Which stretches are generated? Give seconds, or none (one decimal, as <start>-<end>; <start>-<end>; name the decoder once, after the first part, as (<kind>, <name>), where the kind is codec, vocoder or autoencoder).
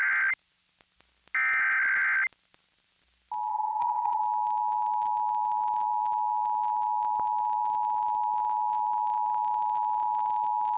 3.5-4.2 (vocoder, HiFi-GAN)